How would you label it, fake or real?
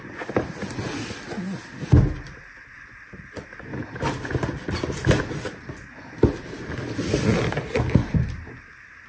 real